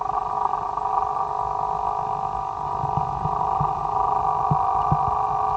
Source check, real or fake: real